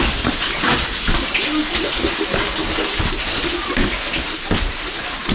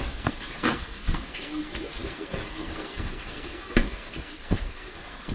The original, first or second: first